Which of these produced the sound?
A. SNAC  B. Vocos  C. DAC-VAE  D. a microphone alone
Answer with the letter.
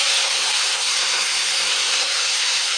A